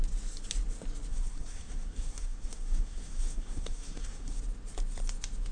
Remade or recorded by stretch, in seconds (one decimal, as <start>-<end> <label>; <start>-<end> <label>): 0.0-1.1 recorded; 1.1-4.4 remade; 4.4-5.5 recorded

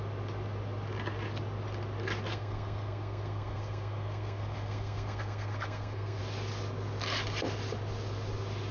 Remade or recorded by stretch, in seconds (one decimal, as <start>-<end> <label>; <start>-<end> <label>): 0.0-2.3 recorded; 2.3-6.2 remade; 6.2-8.7 recorded

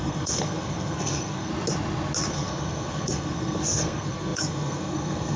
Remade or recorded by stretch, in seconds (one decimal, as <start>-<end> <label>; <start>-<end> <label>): 0.0-1.5 remade; 1.5-2.3 recorded; 2.3-5.4 remade

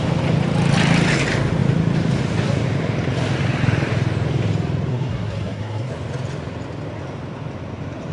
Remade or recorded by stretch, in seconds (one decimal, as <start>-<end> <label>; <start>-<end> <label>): 0.0-4.9 recorded; 4.9-5.9 remade; 5.9-8.1 recorded

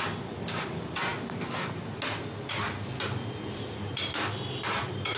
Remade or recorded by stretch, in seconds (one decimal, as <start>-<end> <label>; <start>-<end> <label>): 0.0-5.2 recorded

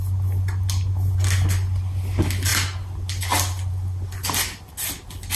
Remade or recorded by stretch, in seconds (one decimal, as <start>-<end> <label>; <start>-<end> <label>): 0.0-5.4 recorded

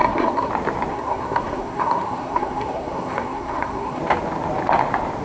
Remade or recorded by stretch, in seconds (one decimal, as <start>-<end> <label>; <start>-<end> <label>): 0.0-0.5 remade; 0.5-0.9 recorded; 0.9-4.0 remade; 4.0-5.2 recorded